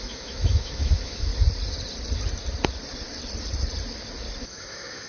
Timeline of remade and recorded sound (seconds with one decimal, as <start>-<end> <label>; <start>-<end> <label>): 0.0-1.3 remade; 1.3-4.4 recorded; 4.4-5.1 remade